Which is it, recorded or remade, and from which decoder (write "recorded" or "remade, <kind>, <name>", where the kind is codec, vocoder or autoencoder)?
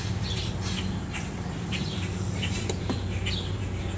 recorded